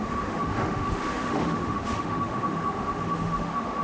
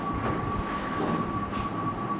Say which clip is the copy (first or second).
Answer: first